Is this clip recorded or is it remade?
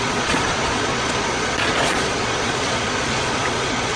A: remade